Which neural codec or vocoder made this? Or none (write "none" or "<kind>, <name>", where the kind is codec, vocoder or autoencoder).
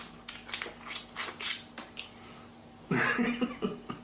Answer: none